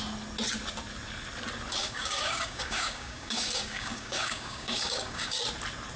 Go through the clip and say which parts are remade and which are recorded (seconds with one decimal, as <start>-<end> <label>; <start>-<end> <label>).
0.0-1.8 recorded; 1.8-5.4 remade; 5.4-6.0 recorded